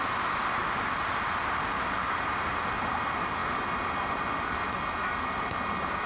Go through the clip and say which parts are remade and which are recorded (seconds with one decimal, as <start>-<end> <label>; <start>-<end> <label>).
0.0-6.1 recorded